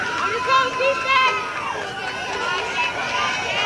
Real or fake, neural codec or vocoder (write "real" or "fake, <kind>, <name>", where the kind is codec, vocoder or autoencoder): real